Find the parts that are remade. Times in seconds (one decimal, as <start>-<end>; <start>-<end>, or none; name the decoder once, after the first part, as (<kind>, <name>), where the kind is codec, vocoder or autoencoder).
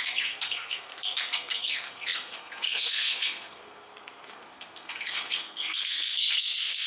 0.0-6.9 (codec, SNAC)